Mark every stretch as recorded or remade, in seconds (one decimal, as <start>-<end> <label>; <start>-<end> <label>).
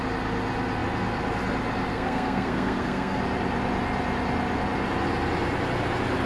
0.0-1.9 recorded; 1.9-3.2 remade; 3.2-6.3 recorded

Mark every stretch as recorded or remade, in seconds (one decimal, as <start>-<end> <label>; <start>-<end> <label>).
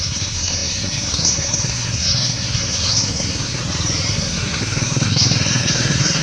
0.0-3.6 remade; 3.6-4.1 recorded; 4.1-6.2 remade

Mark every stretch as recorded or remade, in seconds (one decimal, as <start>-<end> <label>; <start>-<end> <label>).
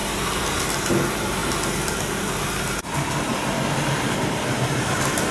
0.0-5.3 recorded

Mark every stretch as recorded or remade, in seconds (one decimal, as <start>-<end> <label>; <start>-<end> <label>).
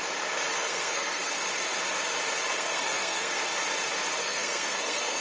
0.0-0.5 recorded; 0.5-1.3 remade; 1.3-2.5 recorded; 2.5-3.4 remade; 3.4-4.2 recorded; 4.2-5.2 remade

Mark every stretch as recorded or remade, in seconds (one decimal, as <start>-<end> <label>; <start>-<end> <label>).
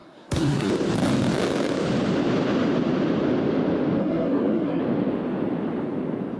0.0-0.7 remade; 0.7-4.0 recorded; 4.0-4.8 remade; 4.8-6.4 recorded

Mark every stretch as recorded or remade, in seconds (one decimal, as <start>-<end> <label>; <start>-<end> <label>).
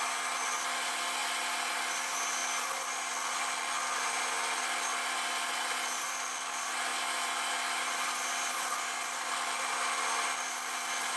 0.0-11.2 recorded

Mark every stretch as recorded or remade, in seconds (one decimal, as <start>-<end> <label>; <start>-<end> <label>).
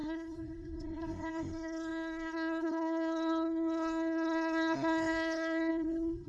0.0-6.3 remade